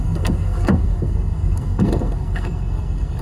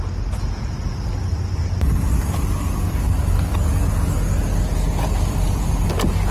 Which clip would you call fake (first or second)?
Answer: first